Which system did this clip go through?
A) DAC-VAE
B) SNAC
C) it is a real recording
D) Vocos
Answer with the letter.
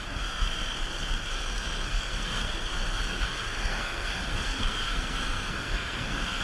B